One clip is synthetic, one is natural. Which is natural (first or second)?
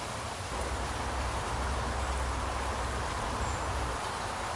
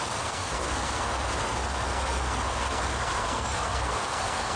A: first